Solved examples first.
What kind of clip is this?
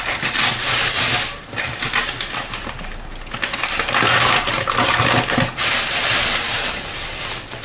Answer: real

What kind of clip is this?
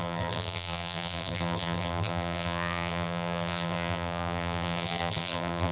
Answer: fake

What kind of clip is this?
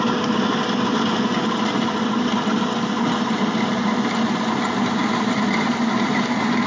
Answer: real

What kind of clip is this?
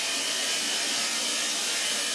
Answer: real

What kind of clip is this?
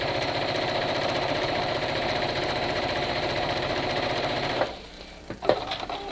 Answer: fake